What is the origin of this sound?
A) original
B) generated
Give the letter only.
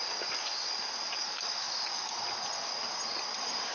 A